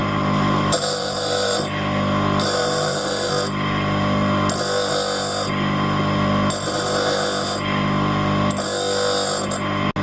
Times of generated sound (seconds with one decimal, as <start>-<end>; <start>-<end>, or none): 0.0-1.6; 2.6-3.3